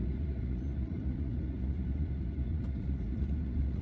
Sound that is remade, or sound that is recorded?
remade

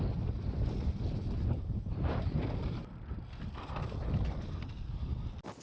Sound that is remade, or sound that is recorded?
recorded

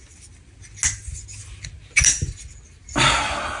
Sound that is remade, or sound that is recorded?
recorded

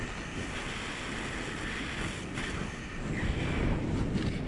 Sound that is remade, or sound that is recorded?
recorded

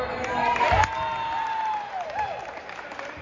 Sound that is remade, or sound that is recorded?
recorded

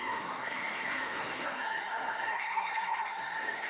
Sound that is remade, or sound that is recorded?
remade